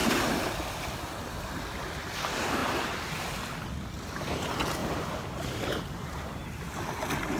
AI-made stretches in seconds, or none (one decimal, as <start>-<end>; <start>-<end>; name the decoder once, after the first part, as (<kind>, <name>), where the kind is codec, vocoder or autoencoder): 0.0-0.5 (vocoder, BigVGAN v2); 2.6-3.3; 4.8-6.5